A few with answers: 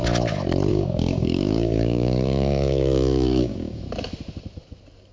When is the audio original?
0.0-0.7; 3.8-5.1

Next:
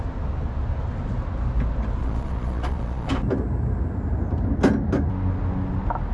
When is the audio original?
0.0-2.0; 3.1-6.1

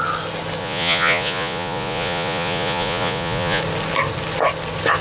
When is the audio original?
0.0-0.6; 3.6-5.0

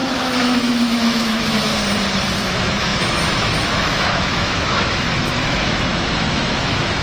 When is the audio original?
1.7-2.5

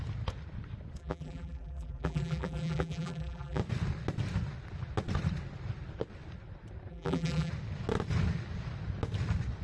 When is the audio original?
0.0-1.0; 3.6-6.9; 7.5-9.6

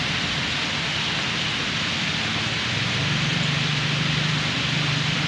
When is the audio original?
0.0-5.3

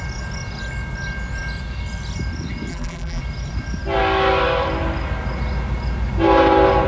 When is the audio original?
0.0-2.7; 3.2-6.9